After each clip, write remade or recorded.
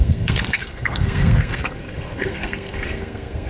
remade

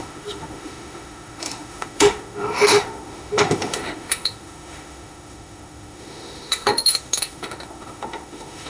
remade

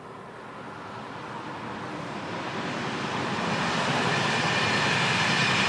recorded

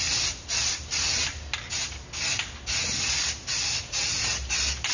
recorded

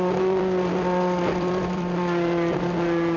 remade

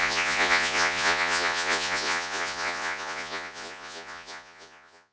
remade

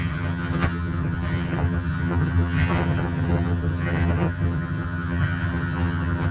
remade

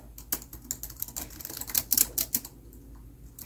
recorded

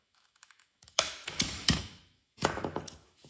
remade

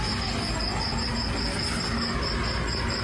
recorded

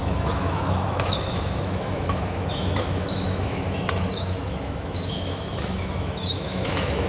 remade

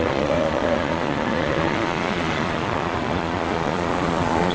remade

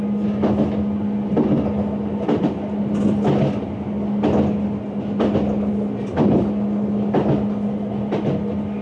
recorded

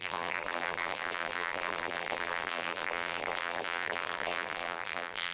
remade